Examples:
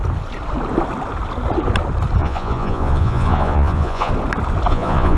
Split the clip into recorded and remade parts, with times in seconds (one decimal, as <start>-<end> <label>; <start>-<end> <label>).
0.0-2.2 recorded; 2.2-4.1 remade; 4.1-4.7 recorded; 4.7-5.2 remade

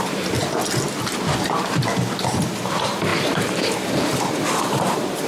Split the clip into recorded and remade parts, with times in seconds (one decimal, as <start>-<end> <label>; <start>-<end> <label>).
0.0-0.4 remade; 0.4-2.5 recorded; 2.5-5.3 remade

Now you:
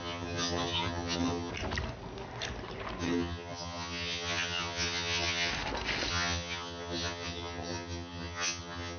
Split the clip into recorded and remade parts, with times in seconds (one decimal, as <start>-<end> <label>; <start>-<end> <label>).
0.0-1.5 remade; 1.5-3.0 recorded; 3.0-5.5 remade; 5.5-6.1 recorded; 6.1-9.0 remade

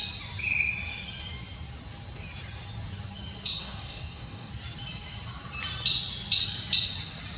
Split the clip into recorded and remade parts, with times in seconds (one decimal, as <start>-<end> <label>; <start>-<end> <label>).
0.0-3.6 recorded; 3.6-4.5 remade; 4.5-7.4 recorded

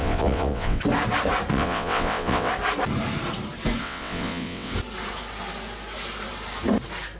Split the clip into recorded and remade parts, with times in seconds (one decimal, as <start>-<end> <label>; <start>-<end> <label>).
0.0-0.8 remade; 0.8-1.5 recorded; 1.5-2.5 remade; 2.5-3.8 recorded; 3.8-4.7 remade; 4.7-7.2 recorded

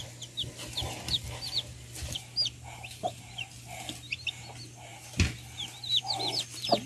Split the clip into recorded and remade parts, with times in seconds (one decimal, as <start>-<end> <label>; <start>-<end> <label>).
0.0-6.9 recorded

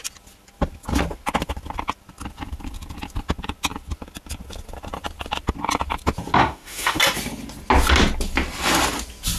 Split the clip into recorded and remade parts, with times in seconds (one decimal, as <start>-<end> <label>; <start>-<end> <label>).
0.0-6.4 recorded; 6.4-7.0 remade; 7.0-9.4 recorded